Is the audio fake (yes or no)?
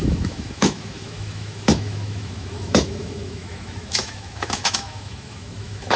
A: yes